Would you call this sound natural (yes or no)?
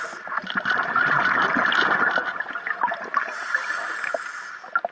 yes